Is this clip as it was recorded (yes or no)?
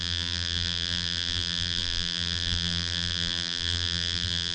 no